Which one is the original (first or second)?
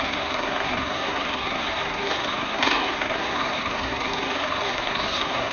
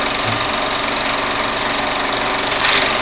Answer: second